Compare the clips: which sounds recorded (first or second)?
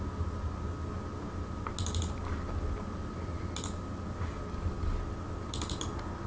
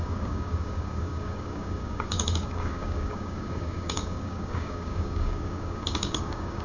first